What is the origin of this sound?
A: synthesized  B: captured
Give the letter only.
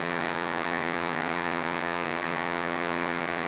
A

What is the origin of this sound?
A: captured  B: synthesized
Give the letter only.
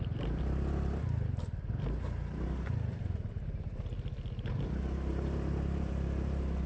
B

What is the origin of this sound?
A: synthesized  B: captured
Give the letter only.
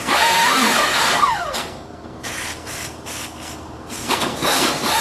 A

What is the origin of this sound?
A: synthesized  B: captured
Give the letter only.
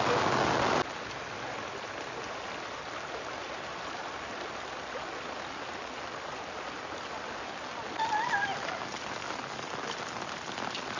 B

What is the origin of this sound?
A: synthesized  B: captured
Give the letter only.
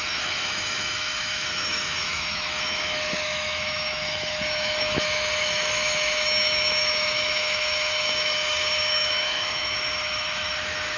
A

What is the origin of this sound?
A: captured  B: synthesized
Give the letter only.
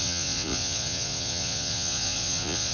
B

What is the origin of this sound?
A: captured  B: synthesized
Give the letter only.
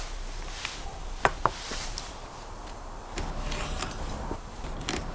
A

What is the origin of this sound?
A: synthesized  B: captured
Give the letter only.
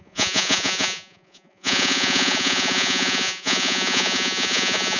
A